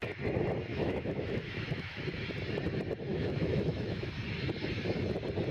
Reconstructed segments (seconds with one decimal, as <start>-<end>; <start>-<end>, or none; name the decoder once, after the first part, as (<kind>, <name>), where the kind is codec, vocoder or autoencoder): 0.7-2.0 (autoencoder, DAC-VAE); 3.1-4.1